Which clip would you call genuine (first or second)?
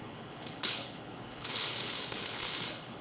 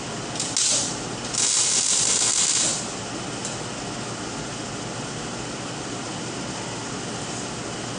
second